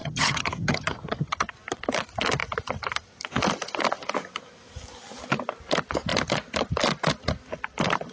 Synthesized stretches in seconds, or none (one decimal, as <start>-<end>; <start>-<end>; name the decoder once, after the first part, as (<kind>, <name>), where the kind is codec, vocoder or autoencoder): 0.0-1.5 (vocoder, HiFi-GAN)

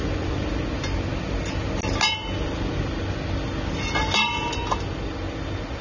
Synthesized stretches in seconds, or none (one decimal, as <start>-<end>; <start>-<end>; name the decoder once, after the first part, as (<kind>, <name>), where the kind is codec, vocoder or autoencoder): none

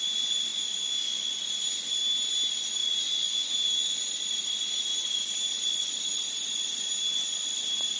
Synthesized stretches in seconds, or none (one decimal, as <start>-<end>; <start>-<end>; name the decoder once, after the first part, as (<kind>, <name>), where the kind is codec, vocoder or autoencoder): 0.0-0.5 (vocoder, BigVGAN v2); 1.4-8.0

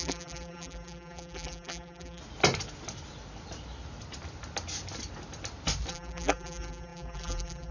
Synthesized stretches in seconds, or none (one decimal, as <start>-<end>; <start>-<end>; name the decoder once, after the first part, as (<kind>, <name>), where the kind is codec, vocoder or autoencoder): 0.0-2.2 (vocoder, BigVGAN v2); 5.9-7.7

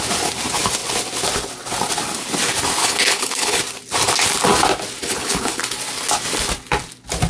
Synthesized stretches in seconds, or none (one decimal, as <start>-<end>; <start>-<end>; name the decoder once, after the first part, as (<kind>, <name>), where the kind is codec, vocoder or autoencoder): 2.8-3.6 (codec, HILCodec); 5.0-5.6